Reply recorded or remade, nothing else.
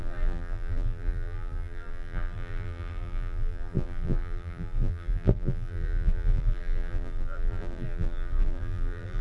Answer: remade